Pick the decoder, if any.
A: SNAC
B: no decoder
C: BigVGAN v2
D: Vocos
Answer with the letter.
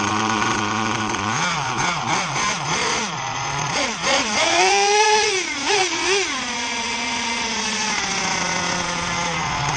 D